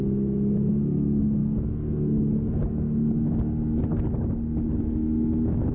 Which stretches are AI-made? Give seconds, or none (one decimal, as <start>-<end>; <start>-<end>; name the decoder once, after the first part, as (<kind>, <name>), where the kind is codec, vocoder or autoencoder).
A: none